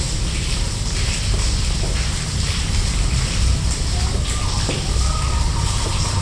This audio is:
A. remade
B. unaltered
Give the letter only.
B